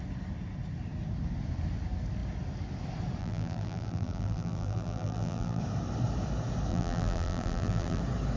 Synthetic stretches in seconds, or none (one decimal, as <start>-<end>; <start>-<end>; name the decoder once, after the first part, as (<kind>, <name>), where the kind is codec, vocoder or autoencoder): 3.2-5.6 (vocoder, BigVGAN v2); 6.7-8.0

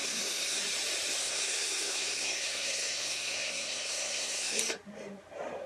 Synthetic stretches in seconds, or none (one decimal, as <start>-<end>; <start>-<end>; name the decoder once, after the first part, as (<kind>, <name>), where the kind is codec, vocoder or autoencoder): 0.0-0.6 (codec, SNAC); 1.2-4.6

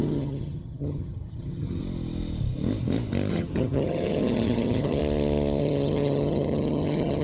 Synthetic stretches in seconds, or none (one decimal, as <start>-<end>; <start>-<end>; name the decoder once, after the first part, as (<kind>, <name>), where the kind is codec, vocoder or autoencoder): 0.0-1.8 (vocoder, HiFi-GAN); 3.3-5.0; 5.6-7.2

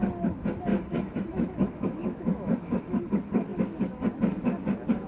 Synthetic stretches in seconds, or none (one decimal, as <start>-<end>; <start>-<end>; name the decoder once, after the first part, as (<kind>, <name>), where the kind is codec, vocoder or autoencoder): 0.7-3.0 (autoencoder, DAC-VAE)